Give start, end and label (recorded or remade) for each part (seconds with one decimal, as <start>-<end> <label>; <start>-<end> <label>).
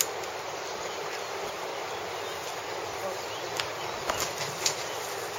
0.0-1.7 remade; 1.7-3.8 recorded; 3.8-5.4 remade